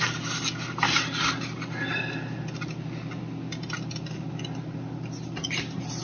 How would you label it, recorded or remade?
recorded